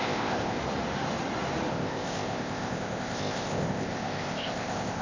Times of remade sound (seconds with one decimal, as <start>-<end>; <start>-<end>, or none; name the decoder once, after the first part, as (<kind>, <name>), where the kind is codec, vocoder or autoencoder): 0.0-0.6 (codec, ZipCodec); 1.7-5.0